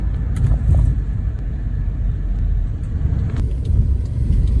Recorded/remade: recorded